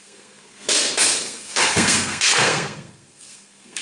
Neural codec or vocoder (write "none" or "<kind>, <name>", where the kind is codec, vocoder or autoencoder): codec, SNAC